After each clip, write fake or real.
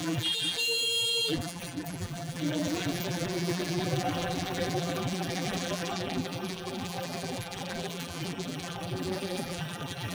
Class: fake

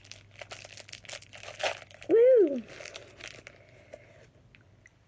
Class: real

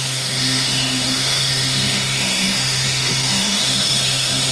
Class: fake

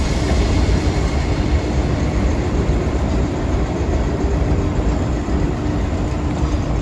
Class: fake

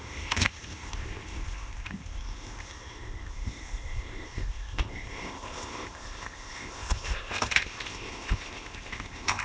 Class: fake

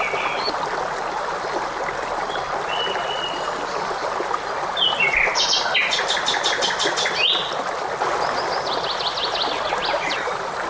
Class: real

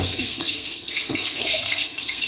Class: fake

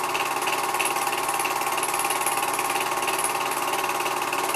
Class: real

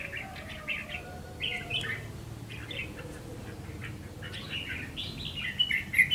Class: real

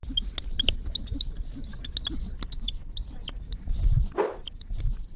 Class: real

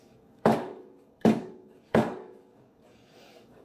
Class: fake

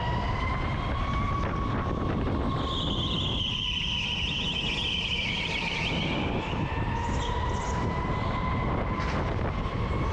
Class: real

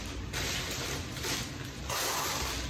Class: real